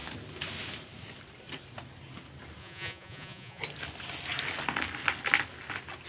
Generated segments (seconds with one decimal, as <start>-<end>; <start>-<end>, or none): 2.6-3.6

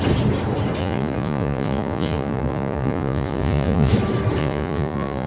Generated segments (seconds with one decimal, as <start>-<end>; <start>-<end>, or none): 0.8-3.9; 4.4-5.3